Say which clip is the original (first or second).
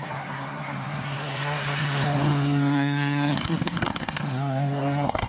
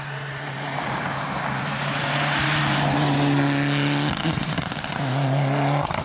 second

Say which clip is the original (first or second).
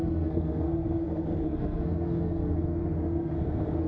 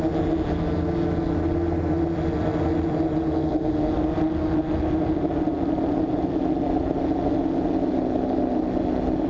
second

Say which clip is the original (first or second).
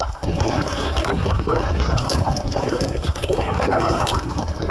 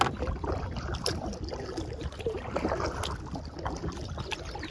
second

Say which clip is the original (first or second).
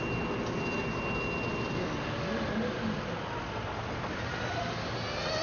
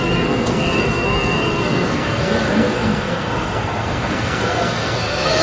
first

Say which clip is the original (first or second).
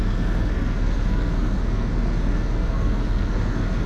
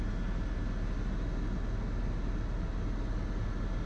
second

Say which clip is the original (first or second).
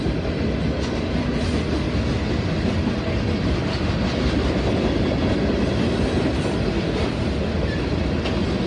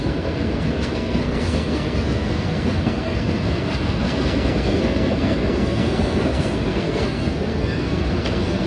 first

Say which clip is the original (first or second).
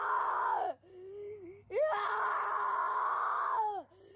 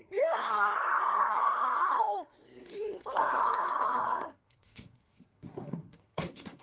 first